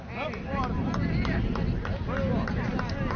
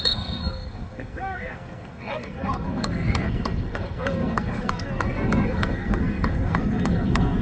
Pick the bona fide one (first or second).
first